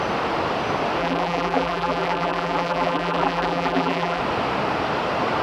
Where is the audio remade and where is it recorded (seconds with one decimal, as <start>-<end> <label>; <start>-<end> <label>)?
0.0-1.0 recorded; 1.0-4.2 remade; 4.2-5.4 recorded